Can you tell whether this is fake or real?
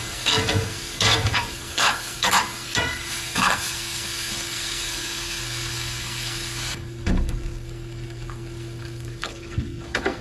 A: fake